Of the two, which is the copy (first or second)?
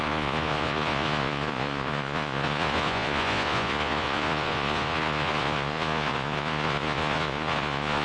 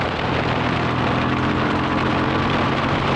first